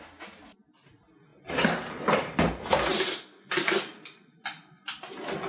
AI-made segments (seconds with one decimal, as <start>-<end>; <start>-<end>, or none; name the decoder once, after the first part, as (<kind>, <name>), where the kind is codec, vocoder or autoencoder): none